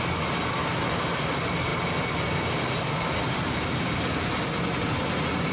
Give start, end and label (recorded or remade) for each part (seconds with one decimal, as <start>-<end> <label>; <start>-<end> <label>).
0.0-5.5 recorded